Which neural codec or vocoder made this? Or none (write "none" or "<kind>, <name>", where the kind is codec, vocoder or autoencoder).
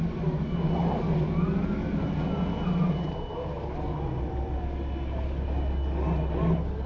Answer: none